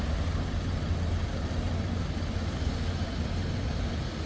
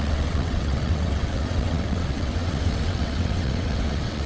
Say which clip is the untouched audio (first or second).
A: first